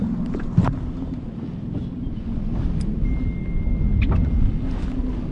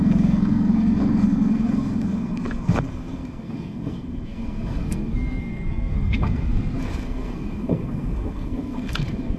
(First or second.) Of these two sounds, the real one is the first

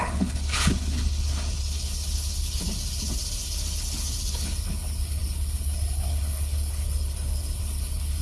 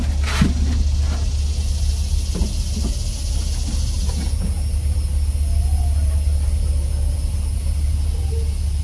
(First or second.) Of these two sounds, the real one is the second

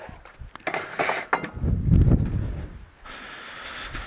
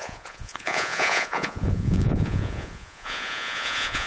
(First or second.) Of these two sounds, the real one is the first